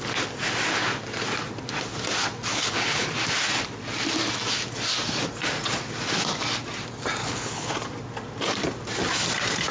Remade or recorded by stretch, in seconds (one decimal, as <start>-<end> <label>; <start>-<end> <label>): 0.0-2.5 recorded; 2.5-3.1 remade; 3.1-7.2 recorded; 7.2-7.7 remade; 7.7-9.7 recorded